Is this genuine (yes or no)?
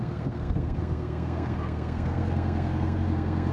no